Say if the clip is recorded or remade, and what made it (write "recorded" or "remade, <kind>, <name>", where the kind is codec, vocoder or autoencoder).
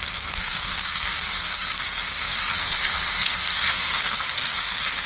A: remade, codec, SNAC